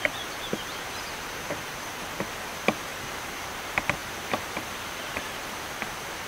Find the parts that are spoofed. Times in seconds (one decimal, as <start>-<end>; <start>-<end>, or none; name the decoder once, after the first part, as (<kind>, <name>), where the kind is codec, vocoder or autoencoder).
0.0-1.7 (vocoder, BigVGAN v2); 2.3-6.3